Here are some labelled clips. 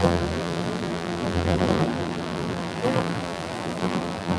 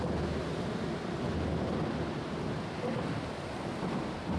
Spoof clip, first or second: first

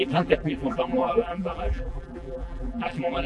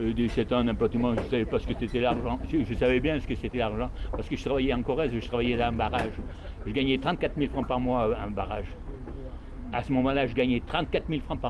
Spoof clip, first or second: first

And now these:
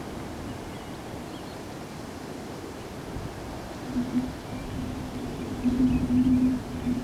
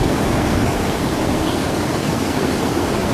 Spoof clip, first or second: second